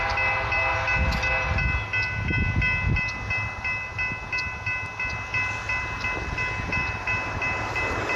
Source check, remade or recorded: recorded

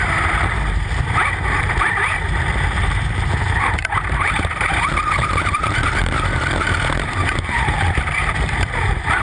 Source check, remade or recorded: remade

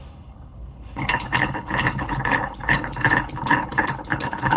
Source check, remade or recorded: remade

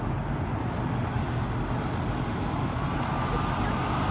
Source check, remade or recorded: recorded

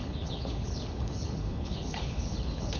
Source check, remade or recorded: remade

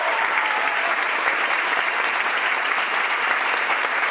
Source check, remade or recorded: remade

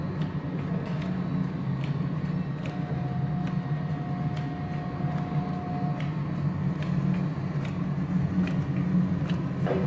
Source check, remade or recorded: recorded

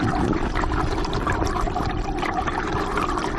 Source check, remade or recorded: recorded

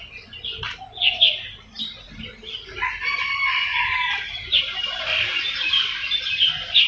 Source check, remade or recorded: recorded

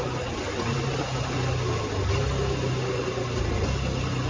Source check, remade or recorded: recorded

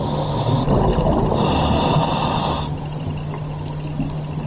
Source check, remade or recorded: recorded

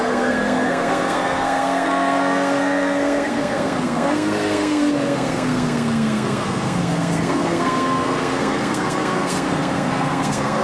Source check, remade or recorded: remade